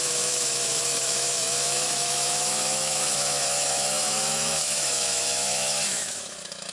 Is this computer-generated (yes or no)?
yes